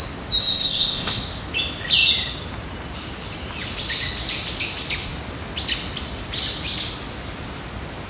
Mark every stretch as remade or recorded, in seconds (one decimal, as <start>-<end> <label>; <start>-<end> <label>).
0.0-0.4 recorded; 0.4-1.2 remade; 1.2-8.1 recorded